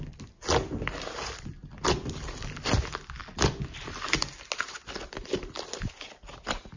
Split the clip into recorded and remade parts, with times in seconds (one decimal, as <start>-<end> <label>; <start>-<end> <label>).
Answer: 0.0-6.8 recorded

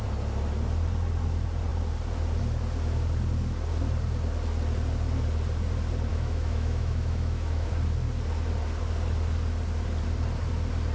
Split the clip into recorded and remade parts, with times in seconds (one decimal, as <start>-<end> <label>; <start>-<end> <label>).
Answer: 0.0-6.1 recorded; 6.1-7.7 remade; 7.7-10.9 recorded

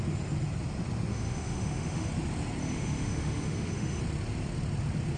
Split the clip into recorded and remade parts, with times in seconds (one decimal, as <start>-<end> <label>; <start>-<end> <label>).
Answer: 0.0-1.1 recorded; 1.1-2.1 remade; 2.1-2.6 recorded; 2.6-4.0 remade; 4.0-5.2 recorded